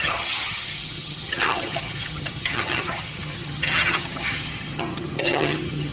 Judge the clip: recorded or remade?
remade